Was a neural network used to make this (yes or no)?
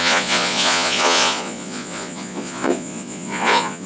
yes